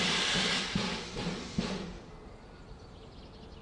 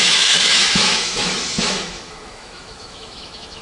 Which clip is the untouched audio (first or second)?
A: first